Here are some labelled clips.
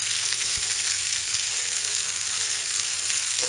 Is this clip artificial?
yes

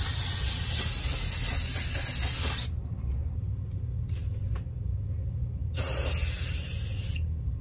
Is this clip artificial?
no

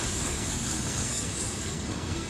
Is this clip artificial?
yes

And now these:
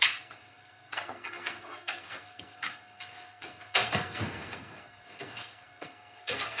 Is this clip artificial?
yes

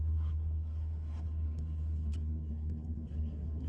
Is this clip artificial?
yes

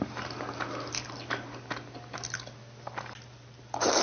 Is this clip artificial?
no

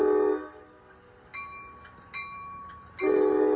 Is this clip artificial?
no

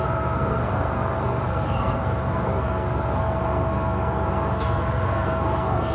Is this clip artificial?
yes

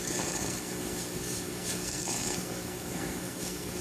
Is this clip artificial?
yes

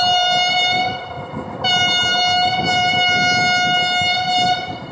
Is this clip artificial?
no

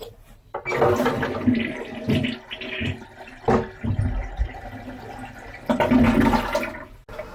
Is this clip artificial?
no